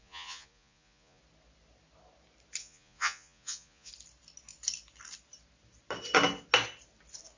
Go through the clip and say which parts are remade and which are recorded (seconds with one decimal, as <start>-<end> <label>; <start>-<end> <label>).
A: 0.0-1.2 remade; 1.2-2.6 recorded; 2.6-3.9 remade; 3.9-7.4 recorded